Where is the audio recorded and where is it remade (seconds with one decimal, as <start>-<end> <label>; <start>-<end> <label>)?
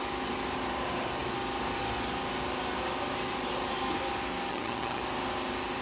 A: 0.0-4.5 recorded; 4.5-5.0 remade; 5.0-5.8 recorded